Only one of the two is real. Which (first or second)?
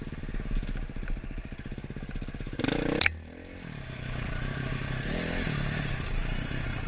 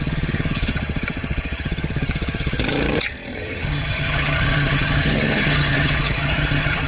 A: first